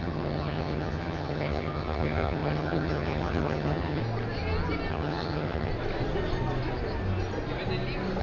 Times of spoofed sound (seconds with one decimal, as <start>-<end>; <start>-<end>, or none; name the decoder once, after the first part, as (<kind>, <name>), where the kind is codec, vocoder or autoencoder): 0.0-4.0 (vocoder, HiFi-GAN); 4.9-5.7